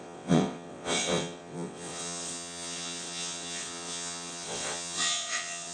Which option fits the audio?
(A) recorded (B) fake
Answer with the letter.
B